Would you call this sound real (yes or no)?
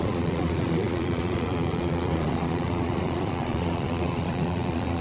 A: no